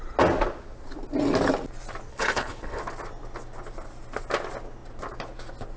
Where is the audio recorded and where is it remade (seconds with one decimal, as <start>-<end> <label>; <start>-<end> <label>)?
0.0-2.1 recorded; 2.1-2.8 remade; 2.8-5.8 recorded

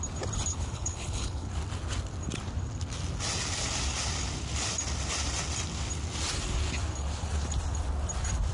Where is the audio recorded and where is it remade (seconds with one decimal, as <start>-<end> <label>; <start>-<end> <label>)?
0.0-0.5 recorded; 0.5-1.5 remade; 1.5-8.5 recorded